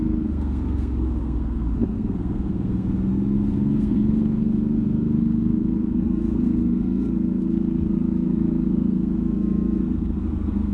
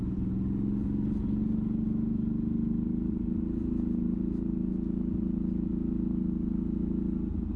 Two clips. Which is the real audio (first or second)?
second